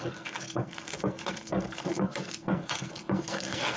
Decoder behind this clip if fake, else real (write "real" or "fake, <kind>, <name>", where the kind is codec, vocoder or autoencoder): fake, codec, SNAC